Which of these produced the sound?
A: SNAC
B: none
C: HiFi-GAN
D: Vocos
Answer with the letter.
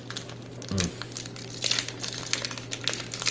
B